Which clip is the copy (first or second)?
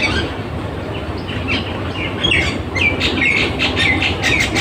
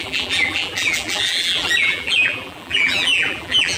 second